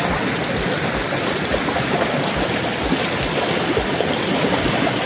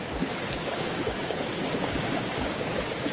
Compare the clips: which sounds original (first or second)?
first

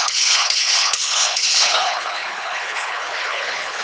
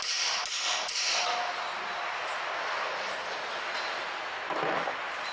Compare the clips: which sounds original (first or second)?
second